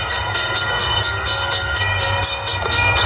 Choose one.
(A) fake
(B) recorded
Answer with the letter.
A